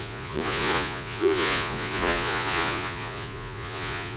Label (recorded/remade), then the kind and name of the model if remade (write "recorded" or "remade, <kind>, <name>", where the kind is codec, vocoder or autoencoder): remade, vocoder, Vocos